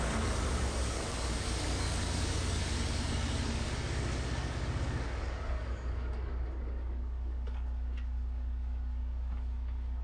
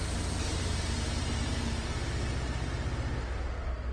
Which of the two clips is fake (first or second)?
first